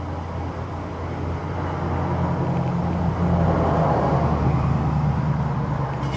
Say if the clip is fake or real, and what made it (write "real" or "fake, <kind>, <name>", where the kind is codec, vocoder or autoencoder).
real